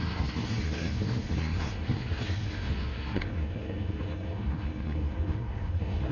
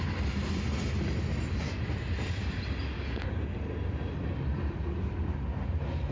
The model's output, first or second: first